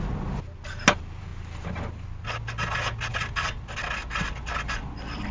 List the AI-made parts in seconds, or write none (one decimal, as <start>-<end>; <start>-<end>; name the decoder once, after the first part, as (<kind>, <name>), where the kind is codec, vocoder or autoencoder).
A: none